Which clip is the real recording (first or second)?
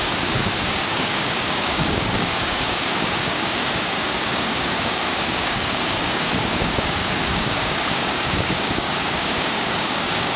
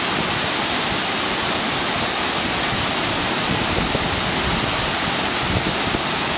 second